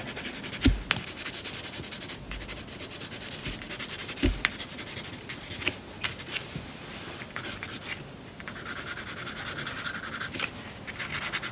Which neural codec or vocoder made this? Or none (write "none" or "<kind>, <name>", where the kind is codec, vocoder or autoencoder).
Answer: none